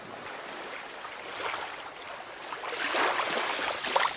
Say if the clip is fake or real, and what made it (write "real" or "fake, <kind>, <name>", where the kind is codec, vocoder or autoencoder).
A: real